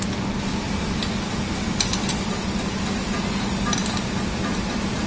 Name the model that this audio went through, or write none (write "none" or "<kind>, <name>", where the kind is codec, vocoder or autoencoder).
none